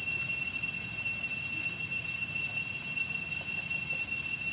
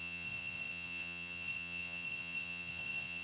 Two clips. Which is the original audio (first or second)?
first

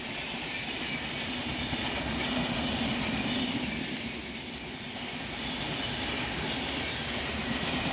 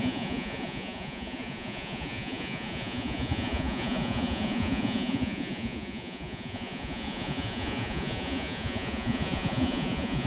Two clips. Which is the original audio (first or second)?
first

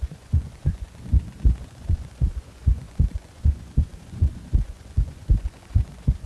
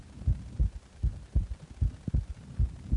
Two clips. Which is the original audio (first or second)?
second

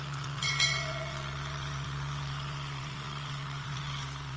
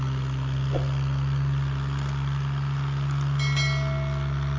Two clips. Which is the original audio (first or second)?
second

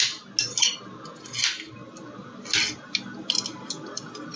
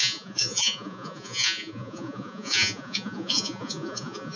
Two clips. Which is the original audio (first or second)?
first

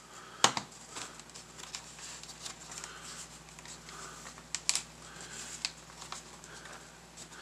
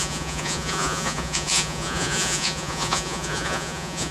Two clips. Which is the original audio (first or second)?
first